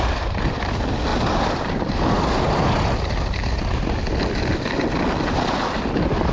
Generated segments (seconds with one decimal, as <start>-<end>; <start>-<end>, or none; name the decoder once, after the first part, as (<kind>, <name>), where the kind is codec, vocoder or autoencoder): none